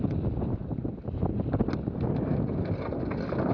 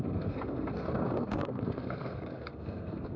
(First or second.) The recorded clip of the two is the first